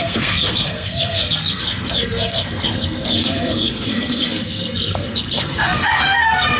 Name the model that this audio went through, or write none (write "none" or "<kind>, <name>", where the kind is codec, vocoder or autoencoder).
codec, SNAC